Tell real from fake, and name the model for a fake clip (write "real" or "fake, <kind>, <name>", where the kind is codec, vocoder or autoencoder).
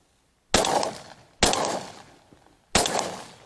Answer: real